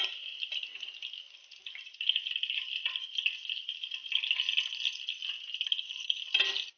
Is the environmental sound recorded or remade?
recorded